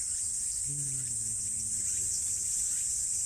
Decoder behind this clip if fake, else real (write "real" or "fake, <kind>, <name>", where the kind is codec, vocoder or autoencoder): real